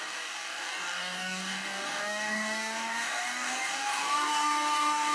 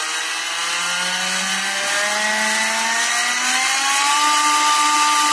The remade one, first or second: first